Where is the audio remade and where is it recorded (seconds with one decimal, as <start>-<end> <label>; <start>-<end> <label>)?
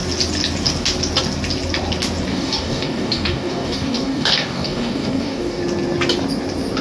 0.0-2.3 recorded; 2.3-5.6 remade; 5.6-6.8 recorded